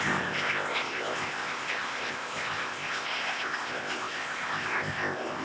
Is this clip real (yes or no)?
no